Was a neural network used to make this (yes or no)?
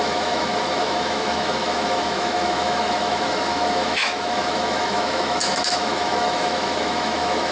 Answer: yes